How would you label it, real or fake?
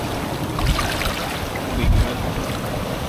fake